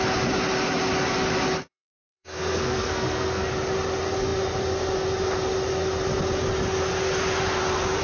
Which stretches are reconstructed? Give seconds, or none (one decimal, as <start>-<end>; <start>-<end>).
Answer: 1.6-3.5